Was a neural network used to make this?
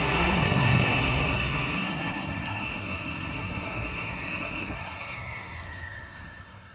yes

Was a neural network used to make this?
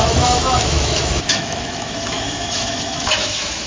yes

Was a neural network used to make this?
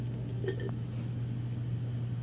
no